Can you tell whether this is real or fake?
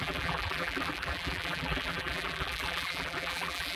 fake